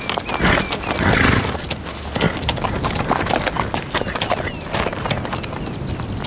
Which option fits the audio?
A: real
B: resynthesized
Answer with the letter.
A